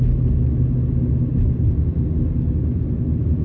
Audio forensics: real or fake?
real